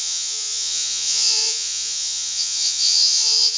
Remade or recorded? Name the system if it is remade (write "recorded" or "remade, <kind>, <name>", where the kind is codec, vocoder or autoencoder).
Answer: remade, vocoder, Vocos